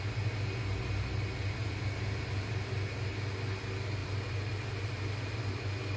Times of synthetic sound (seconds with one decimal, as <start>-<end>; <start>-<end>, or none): 1.6-2.5; 4.0-5.4